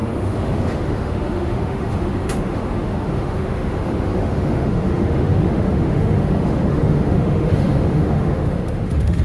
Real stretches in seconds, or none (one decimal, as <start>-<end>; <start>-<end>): none